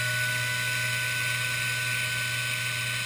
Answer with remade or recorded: recorded